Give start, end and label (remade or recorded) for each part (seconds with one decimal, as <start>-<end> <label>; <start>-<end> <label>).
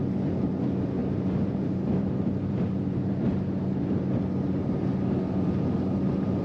0.0-1.0 recorded; 1.0-3.1 remade; 3.1-4.6 recorded; 4.6-5.6 remade; 5.6-6.4 recorded